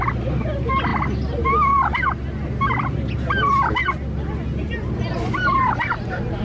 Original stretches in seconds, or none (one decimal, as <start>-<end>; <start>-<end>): 0.0-6.4